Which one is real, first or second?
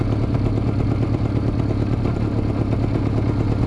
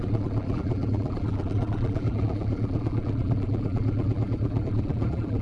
first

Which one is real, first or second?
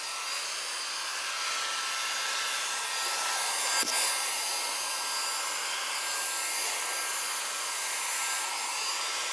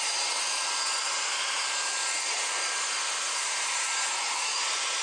first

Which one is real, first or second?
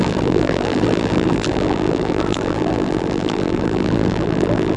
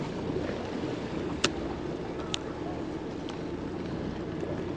second